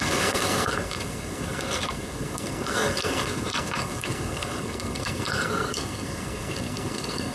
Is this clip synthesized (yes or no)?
yes